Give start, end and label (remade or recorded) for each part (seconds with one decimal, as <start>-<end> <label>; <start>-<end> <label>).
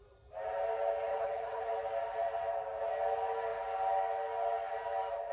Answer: 0.0-1.1 recorded; 1.1-1.7 remade; 1.7-5.3 recorded